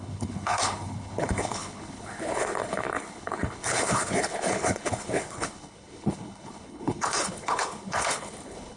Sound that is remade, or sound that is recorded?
remade